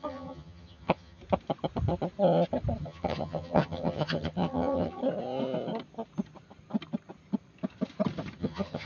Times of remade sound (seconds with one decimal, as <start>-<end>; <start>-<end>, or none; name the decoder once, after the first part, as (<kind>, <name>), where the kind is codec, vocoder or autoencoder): 0.0-1.2 (vocoder, HiFi-GAN); 2.8-5.0; 8.4-8.9